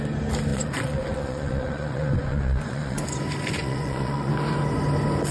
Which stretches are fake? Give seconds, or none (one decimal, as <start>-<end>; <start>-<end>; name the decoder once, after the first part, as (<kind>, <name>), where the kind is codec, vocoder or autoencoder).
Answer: 0.5-3.2 (vocoder, Vocos); 3.6-4.3